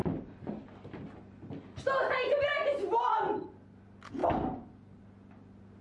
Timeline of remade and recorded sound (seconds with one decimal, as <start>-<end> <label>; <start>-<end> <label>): 0.0-5.8 recorded